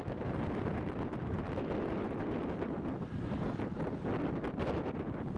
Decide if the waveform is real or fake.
real